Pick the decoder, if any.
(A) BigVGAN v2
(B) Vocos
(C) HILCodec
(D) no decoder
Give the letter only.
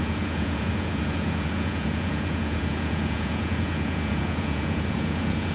B